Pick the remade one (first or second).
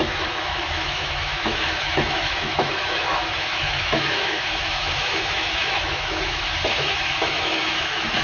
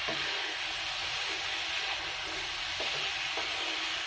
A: first